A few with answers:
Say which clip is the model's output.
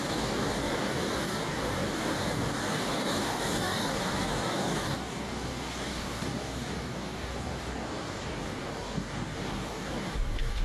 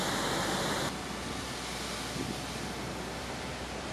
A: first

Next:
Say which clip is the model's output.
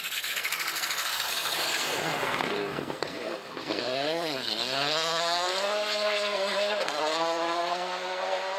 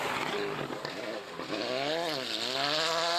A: first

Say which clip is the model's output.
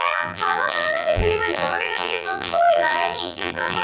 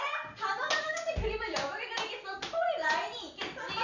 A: first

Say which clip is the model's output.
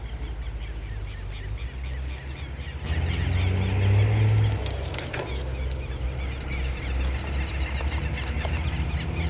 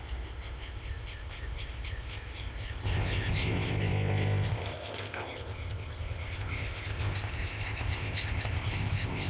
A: second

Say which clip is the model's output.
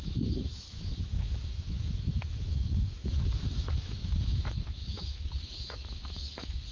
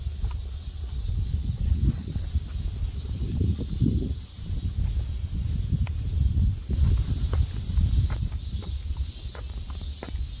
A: first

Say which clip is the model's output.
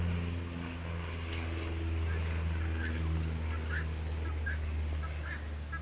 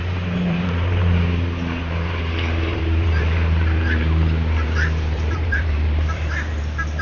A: second